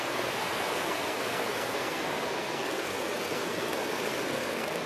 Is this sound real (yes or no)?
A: no